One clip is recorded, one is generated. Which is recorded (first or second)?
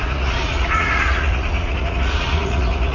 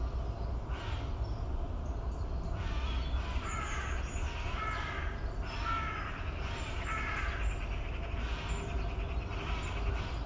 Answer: second